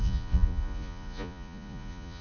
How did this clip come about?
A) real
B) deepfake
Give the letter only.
B